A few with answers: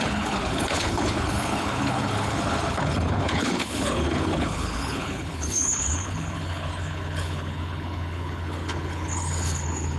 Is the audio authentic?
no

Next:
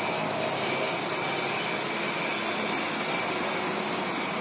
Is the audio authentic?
yes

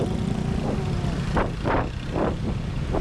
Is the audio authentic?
yes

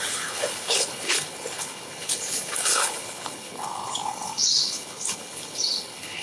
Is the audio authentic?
no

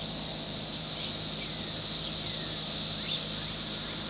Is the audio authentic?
yes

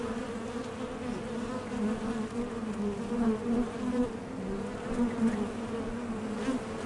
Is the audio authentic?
yes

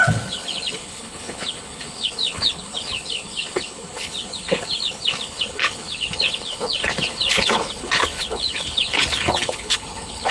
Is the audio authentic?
no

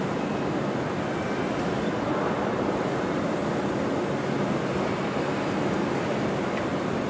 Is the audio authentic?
yes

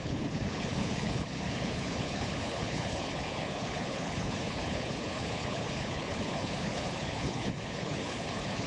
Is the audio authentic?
no